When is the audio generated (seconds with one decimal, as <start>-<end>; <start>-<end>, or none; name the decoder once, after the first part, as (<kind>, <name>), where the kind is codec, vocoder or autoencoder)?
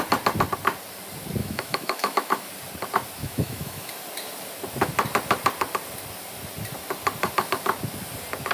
1.4-2.5 (autoencoder, DAC-VAE); 3.2-3.9